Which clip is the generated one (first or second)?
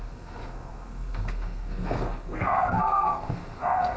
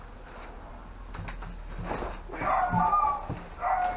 first